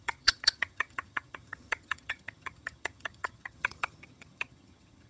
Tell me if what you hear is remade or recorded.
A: remade